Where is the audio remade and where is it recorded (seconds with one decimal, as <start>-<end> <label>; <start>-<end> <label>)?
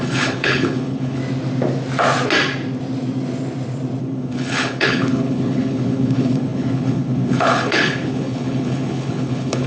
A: 0.0-1.2 remade; 1.2-4.0 recorded; 4.0-9.7 remade